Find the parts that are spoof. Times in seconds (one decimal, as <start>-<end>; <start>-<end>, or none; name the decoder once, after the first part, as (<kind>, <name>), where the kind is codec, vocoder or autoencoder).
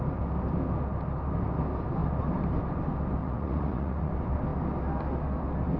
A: 3.2-4.1 (vocoder, Vocos)